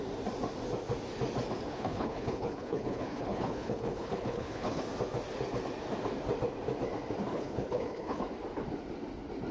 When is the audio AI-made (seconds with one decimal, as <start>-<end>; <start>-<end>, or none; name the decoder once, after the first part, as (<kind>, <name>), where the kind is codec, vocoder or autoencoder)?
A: 1.7-4.8 (codec, HILCodec); 7.3-8.2